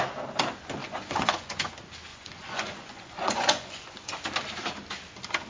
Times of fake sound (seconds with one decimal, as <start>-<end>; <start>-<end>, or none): 0.8-1.7; 2.1-4.2